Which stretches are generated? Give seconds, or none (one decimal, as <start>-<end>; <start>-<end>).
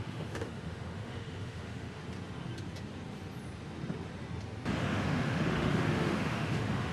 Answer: 0.0-2.0; 4.8-6.9